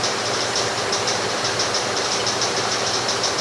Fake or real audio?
fake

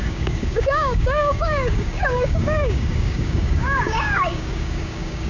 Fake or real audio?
fake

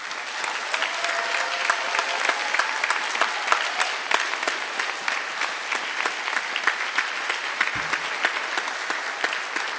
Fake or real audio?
real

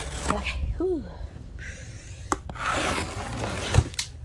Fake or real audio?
real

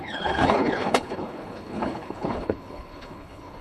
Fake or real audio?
fake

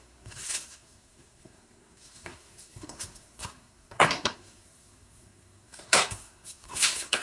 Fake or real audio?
fake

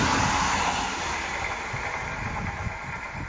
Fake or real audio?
real